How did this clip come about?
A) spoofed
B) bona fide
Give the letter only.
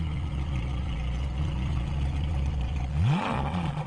A